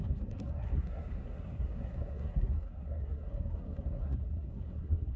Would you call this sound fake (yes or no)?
yes